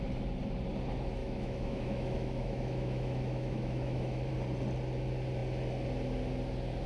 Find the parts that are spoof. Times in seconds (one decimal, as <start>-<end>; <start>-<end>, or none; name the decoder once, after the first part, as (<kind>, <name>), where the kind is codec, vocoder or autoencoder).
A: 1.2-4.3 (autoencoder, DAC-VAE)

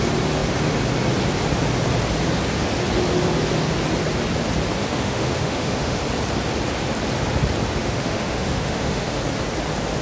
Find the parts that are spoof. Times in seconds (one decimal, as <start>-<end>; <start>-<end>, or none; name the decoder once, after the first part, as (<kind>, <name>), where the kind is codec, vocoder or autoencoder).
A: 4.8-6.0 (autoencoder, DAC-VAE); 7.8-9.2